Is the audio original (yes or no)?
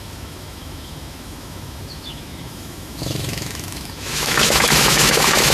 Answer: no